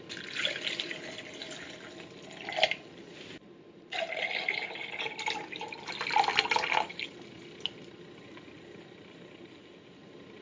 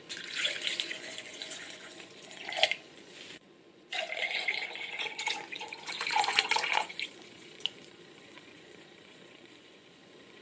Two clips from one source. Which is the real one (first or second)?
first